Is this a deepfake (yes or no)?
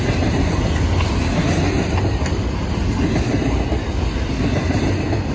no